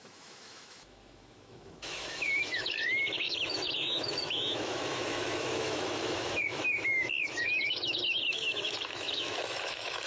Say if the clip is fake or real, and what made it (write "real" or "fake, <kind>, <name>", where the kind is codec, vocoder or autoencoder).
fake, autoencoder, DAC-VAE